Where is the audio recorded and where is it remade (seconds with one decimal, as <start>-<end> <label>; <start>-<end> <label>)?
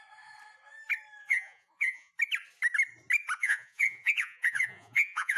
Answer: 0.0-1.2 recorded; 1.2-2.1 remade; 2.1-3.4 recorded; 3.4-5.4 remade